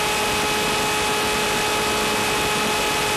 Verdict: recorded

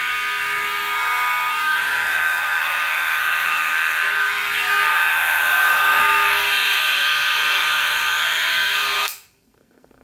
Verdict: remade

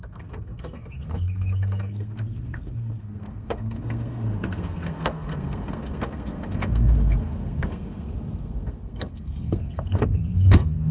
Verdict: remade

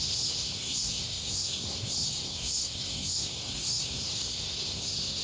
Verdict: remade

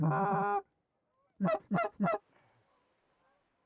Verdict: recorded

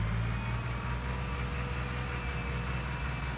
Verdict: recorded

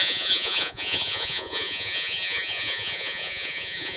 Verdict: remade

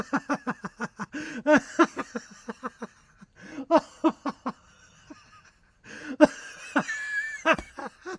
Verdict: recorded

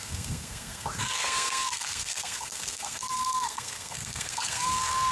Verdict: remade